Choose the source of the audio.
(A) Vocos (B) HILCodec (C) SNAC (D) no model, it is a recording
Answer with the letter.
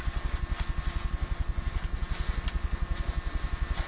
D